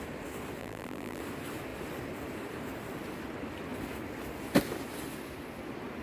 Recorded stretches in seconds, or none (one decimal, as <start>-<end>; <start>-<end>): 0.0-0.6; 1.2-6.0

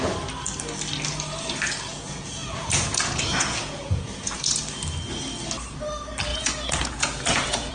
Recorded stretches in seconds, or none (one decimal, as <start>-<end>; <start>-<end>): 0.0-1.9; 4.6-6.3

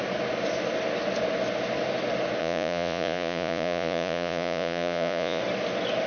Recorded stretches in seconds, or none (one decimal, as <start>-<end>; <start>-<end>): 0.0-2.4; 5.4-6.1

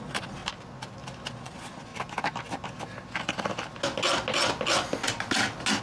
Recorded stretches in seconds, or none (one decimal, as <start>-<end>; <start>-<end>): 0.4-1.3; 1.9-5.8

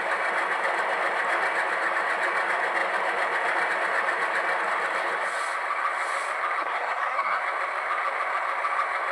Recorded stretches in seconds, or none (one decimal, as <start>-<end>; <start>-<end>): 0.0-6.6; 7.4-9.1